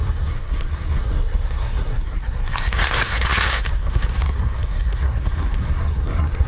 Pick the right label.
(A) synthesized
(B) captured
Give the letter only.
A